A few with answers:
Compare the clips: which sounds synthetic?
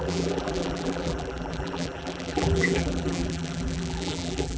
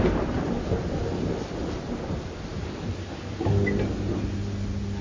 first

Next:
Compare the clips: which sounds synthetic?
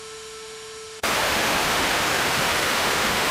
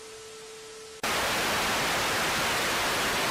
first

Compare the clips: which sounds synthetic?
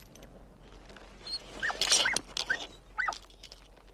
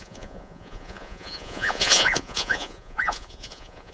second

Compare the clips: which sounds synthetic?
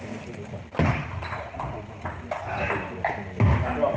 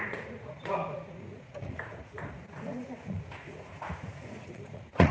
second